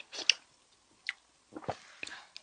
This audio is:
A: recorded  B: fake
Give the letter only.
A